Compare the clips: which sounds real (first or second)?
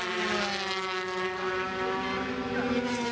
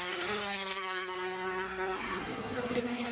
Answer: first